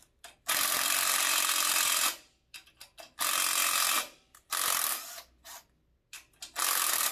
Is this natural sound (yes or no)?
yes